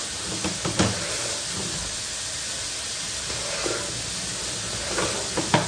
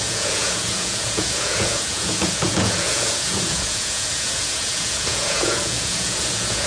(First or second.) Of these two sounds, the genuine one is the first